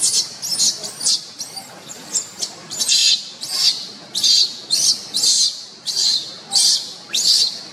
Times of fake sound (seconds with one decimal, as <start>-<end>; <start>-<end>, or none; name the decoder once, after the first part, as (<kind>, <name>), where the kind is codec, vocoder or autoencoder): none